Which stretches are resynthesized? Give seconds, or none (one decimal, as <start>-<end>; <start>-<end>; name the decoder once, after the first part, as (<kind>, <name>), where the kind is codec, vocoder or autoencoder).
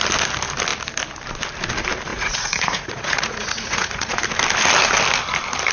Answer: 2.1-4.2 (vocoder, Vocos)